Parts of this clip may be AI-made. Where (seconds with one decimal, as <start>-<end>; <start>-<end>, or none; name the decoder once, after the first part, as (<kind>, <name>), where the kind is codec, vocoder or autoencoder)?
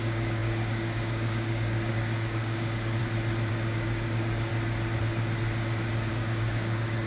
0.0-3.0 (codec, DAC); 3.5-4.5; 6.1-7.1